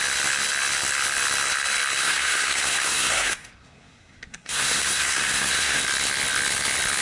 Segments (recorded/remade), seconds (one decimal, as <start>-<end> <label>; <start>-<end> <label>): 0.0-2.0 recorded; 2.0-5.8 remade; 5.8-7.0 recorded